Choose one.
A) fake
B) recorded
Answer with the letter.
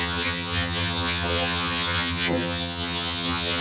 A